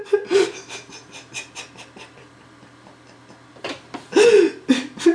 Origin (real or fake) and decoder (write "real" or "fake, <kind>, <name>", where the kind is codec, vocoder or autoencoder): real